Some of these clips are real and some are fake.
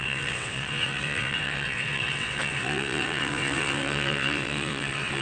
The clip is fake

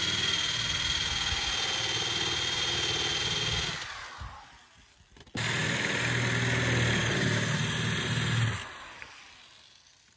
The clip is real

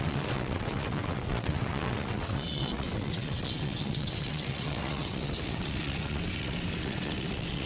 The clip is fake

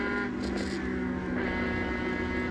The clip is real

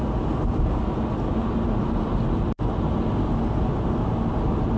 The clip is real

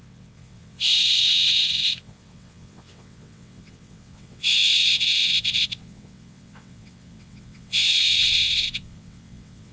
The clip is fake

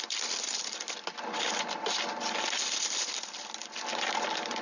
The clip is real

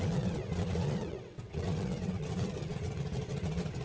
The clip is fake